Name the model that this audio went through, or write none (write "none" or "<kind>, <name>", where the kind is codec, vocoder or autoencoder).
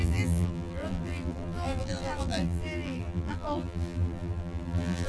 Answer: vocoder, BigVGAN v2